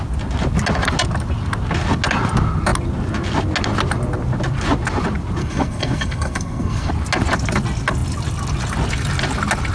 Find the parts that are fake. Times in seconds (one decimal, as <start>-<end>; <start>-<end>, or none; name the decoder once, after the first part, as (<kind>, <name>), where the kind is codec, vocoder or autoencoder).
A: 5.4-6.9 (codec, SNAC)